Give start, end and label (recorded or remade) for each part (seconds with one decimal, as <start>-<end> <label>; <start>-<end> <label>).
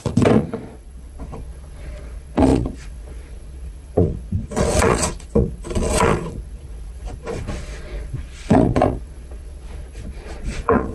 0.0-10.9 remade